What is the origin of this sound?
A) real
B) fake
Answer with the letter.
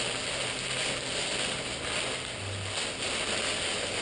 A